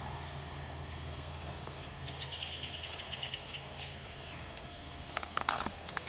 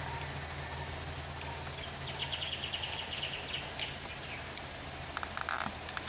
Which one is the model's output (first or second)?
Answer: first